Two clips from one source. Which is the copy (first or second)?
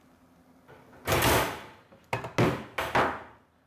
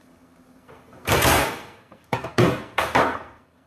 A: second